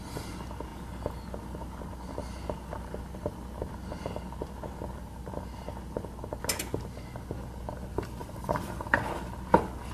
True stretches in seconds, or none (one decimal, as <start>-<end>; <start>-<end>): 0.0-8.2; 9.0-9.9